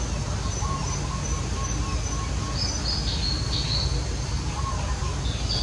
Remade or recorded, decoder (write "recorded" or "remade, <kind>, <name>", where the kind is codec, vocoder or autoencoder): recorded